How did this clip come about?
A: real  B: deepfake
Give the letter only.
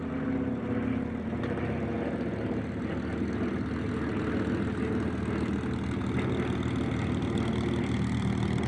A